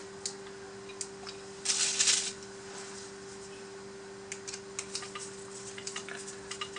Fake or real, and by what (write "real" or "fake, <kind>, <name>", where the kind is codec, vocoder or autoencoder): real